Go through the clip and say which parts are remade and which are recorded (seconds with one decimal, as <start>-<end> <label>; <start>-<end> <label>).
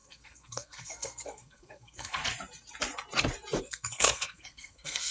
0.0-2.2 remade; 2.2-3.6 recorded; 3.6-5.1 remade